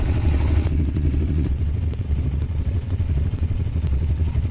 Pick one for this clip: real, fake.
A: fake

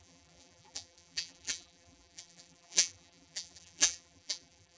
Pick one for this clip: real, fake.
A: fake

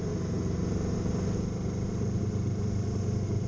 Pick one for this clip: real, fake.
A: real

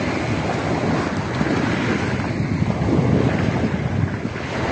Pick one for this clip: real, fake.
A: real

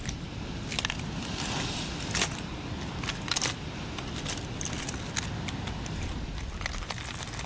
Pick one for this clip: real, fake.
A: real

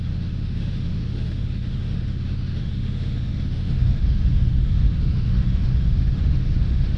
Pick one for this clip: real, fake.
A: fake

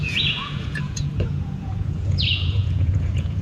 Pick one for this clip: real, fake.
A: fake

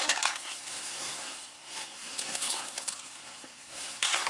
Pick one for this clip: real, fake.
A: fake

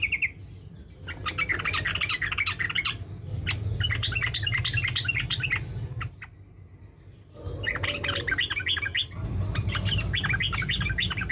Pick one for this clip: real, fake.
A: real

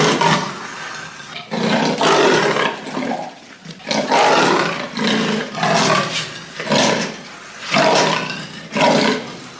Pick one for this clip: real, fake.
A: real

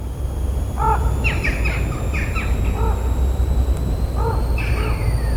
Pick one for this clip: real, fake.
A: fake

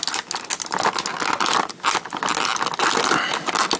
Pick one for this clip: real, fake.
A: real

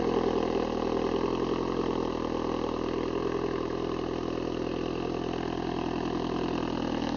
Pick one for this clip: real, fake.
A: real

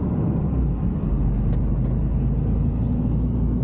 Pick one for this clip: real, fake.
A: real